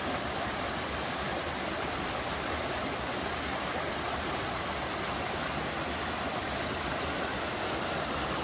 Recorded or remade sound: recorded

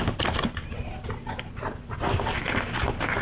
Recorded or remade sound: recorded